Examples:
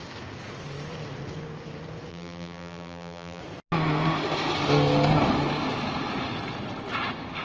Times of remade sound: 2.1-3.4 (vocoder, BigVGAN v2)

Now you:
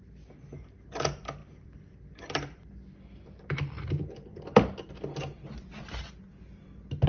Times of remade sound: 1.4-4.9 (vocoder, BigVGAN v2)

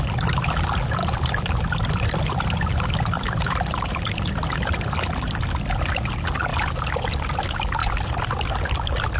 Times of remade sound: 1.0-1.7 (vocoder, BigVGAN v2); 7.8-8.5

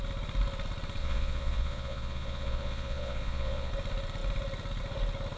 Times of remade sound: 1.0-3.7 (vocoder, Vocos)

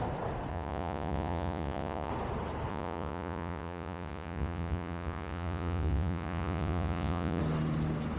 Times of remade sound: 0.5-2.1 (vocoder, Vocos); 2.7-7.4

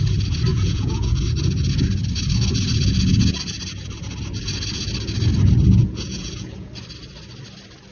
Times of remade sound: 0.5-1.2 (vocoder, Vocos); 5.8-6.7